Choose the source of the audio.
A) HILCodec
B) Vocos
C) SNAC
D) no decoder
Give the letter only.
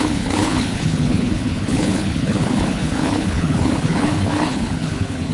A